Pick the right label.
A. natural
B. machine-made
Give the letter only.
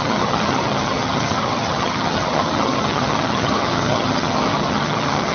B